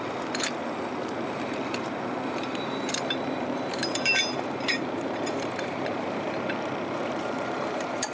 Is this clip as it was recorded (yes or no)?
no